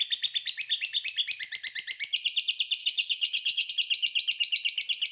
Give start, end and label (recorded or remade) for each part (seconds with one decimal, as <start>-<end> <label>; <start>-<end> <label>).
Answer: 0.0-2.8 recorded; 2.8-3.7 remade; 3.7-5.1 recorded